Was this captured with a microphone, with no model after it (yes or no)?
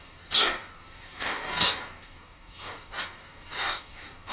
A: no